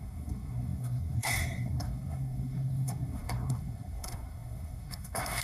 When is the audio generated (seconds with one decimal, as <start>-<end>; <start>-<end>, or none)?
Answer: 0.0-5.4